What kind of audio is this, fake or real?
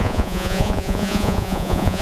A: fake